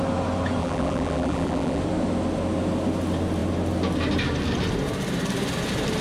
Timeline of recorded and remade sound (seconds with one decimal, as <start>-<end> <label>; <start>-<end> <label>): 0.0-0.6 recorded; 0.6-1.8 remade; 1.8-6.0 recorded